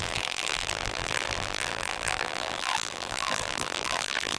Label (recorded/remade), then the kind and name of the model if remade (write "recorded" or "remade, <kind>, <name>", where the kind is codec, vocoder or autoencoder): remade, vocoder, BigVGAN v2